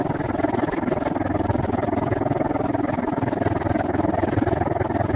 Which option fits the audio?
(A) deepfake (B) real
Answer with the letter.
B